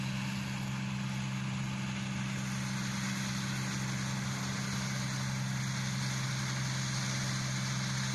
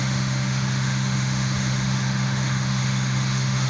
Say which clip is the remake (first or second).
second